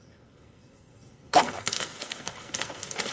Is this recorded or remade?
remade